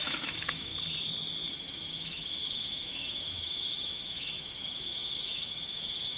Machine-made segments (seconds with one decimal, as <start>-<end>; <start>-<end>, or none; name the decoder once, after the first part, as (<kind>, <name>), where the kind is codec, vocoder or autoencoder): 0.0-0.7 (autoencoder, DAC-VAE); 1.5-6.2